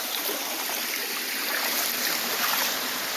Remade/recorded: recorded